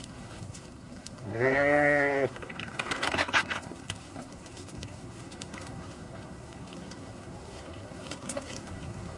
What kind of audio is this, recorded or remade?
remade